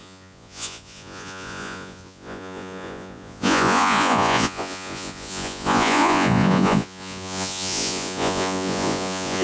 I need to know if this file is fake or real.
fake